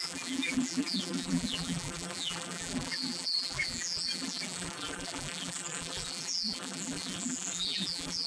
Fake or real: fake